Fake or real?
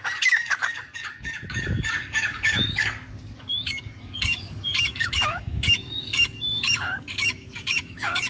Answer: fake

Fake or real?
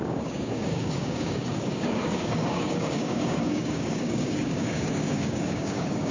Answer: fake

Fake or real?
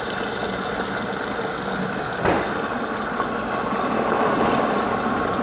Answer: real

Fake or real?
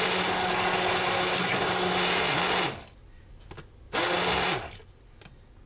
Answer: real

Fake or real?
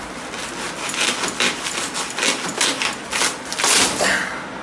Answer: real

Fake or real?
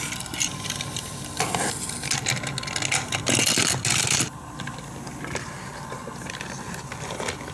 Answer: real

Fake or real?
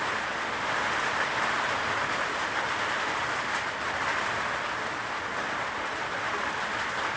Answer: real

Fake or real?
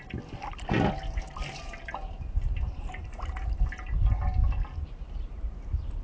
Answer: real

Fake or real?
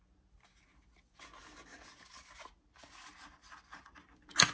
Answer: real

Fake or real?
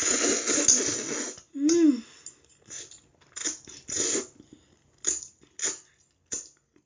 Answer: real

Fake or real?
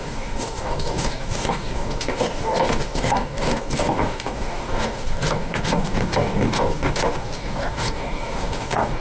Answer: fake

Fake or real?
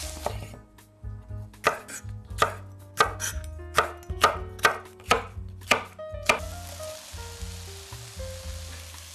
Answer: real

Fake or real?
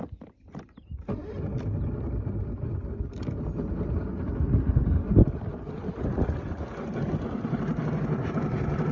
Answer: real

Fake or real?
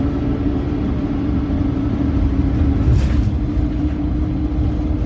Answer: real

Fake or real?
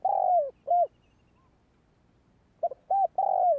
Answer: real